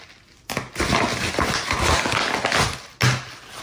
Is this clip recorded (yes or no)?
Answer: yes